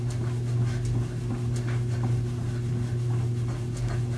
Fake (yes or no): no